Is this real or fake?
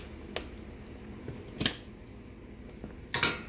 real